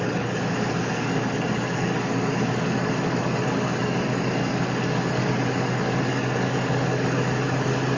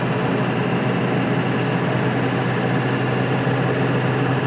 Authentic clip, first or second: second